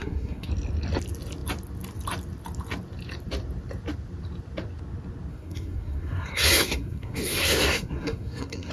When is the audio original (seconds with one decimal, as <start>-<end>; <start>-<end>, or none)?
0.5-5.3